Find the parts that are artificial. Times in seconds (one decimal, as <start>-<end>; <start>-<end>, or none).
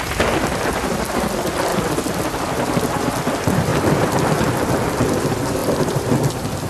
1.7-2.2; 3.7-4.3; 5.6-6.7